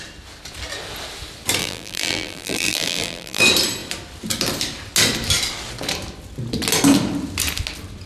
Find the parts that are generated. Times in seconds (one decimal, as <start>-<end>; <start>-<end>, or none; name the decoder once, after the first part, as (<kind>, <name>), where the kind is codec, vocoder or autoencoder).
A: 1.6-3.4 (vocoder, BigVGAN v2)